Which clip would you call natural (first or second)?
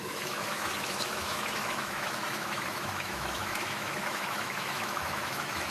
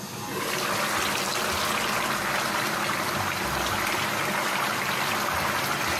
second